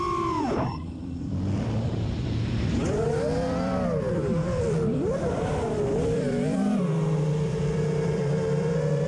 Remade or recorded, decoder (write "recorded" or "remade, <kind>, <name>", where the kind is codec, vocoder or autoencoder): remade, vocoder, BigVGAN v2